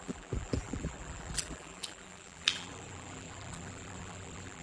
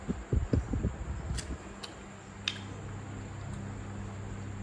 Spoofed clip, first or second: first